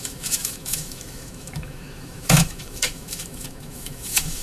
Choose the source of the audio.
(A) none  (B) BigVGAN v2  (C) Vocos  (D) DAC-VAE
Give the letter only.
D